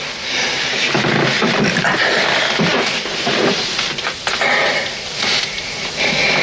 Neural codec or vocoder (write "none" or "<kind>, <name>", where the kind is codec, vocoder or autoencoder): none